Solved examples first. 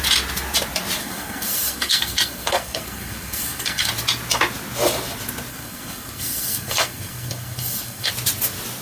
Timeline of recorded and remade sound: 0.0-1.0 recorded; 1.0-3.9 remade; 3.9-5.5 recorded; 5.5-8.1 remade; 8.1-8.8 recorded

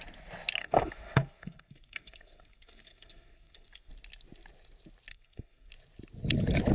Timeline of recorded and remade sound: 0.0-0.6 recorded; 0.6-3.9 remade; 3.9-5.1 recorded; 5.1-5.7 remade; 5.7-6.7 recorded

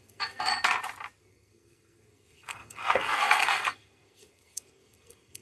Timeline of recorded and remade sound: 0.0-0.5 remade; 0.5-1.2 recorded; 1.2-5.4 remade